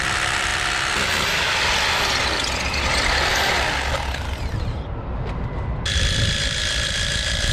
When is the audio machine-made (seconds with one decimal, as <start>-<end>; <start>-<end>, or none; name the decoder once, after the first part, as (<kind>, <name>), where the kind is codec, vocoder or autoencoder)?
none